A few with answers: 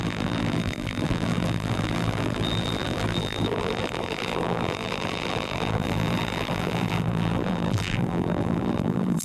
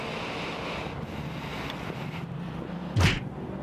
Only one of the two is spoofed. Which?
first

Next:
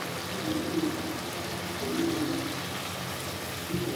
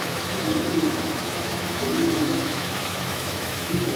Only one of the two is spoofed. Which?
second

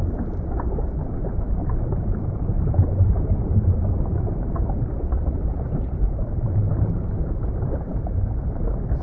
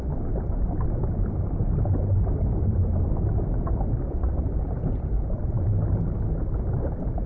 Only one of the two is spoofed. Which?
first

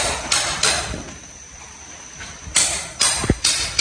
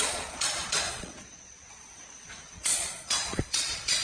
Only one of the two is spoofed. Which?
second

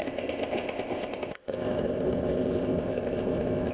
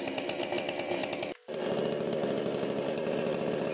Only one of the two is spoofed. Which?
first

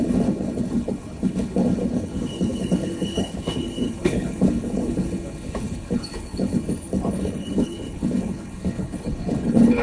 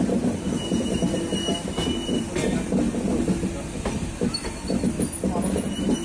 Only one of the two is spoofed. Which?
first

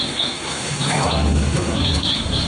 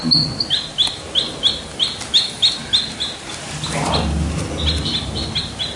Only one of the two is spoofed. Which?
first